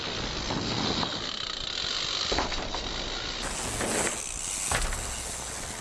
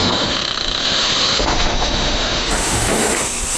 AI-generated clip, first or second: second